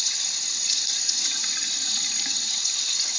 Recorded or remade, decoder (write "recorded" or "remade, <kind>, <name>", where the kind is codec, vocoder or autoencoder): remade, vocoder, Vocos